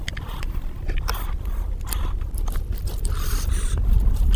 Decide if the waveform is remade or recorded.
remade